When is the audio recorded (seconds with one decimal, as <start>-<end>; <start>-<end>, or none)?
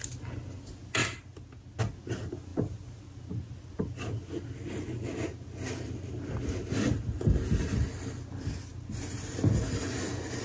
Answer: 0.0-10.4